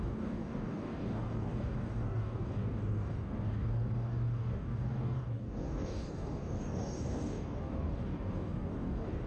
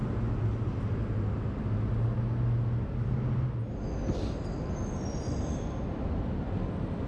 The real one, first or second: second